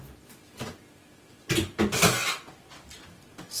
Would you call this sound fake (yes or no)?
no